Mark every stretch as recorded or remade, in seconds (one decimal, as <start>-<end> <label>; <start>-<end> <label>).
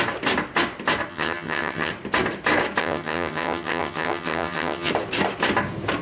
0.0-1.1 recorded; 1.1-1.9 remade; 1.9-2.8 recorded; 2.8-4.9 remade; 4.9-6.0 recorded